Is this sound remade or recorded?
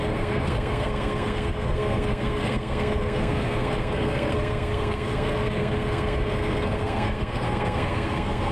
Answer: remade